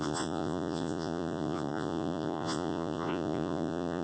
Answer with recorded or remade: remade